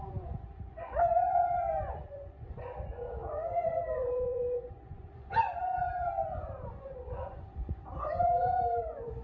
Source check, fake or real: fake